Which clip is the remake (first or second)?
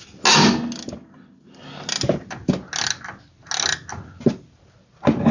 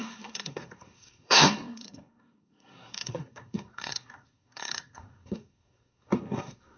second